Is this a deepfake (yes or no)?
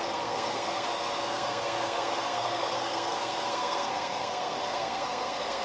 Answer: yes